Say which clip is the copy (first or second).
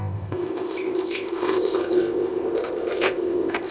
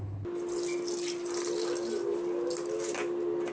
first